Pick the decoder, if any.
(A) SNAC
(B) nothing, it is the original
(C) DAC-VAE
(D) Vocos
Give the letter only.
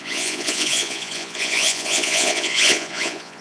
D